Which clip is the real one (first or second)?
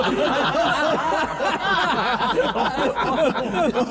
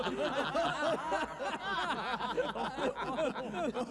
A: second